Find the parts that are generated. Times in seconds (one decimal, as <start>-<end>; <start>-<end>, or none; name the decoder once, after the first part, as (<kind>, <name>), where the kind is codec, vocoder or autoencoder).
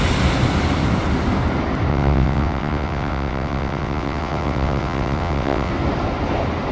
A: 1.9-5.7 (vocoder, WaveNeXt)